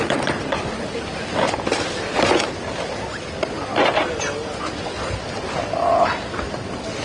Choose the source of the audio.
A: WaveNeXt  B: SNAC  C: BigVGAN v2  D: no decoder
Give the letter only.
D